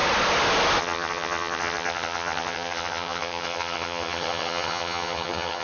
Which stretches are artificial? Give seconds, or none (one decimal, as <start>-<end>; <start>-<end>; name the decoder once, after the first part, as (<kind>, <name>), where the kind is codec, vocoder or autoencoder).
0.8-5.6 (vocoder, HiFi-GAN)